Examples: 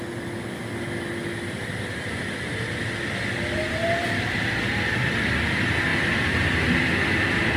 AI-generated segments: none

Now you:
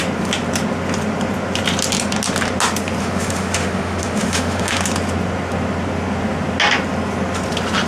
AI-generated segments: 3.0-4.8 (autoencoder, DAC-VAE)

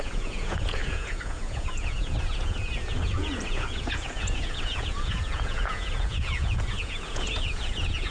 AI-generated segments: 0.0-8.1 (vocoder, Vocos)

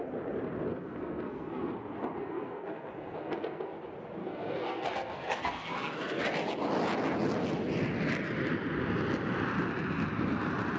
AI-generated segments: 0.7-1.7 (codec, SNAC); 2.2-3.8; 4.2-6.2

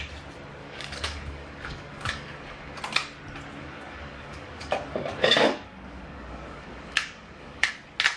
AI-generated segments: 0.6-2.8 (codec, DAC); 3.6-7.7

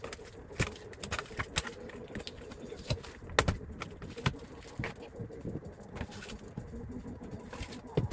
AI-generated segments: none